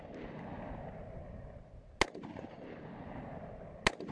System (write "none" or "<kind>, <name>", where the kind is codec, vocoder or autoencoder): none